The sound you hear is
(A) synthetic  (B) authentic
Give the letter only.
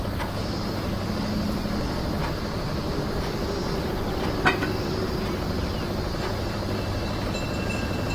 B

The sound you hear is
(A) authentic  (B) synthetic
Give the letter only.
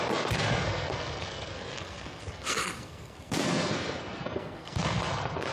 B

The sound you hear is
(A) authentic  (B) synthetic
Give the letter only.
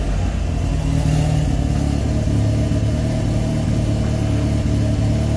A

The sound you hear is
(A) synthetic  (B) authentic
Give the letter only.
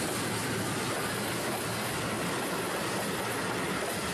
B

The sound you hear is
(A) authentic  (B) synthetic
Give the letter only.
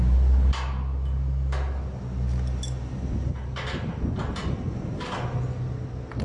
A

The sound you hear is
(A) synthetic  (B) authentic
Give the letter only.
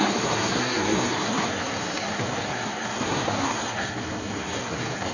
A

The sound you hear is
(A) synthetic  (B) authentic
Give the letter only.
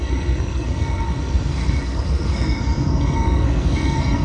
A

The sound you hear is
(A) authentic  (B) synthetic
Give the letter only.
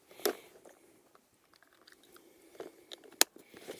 A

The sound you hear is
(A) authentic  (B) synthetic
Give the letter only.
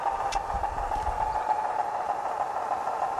A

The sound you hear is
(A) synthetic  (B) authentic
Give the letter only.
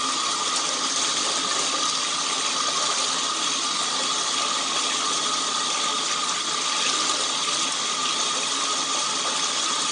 B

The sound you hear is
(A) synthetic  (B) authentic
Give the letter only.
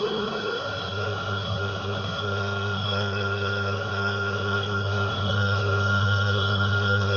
A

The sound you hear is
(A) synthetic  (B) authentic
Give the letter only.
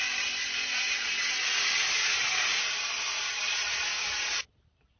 B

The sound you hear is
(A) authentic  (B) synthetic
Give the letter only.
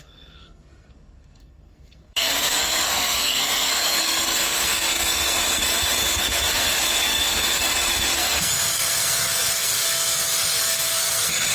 B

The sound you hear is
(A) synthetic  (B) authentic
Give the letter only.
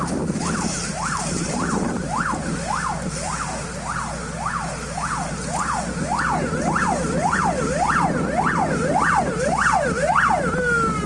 B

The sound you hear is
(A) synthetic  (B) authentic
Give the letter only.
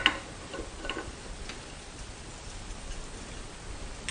B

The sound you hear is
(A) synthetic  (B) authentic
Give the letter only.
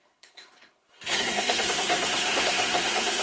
A